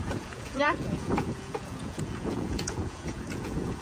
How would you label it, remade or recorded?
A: remade